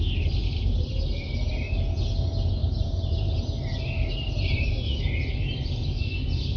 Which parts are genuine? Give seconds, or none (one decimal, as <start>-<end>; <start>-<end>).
0.0-0.4; 1.5-2.6